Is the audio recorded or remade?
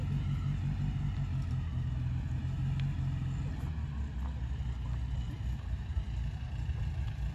recorded